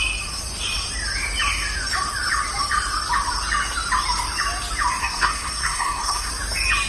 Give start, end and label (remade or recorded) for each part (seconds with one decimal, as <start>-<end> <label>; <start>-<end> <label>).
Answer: 0.0-5.0 recorded; 5.0-6.3 remade; 6.3-6.9 recorded